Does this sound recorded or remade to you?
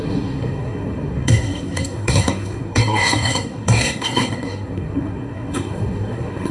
remade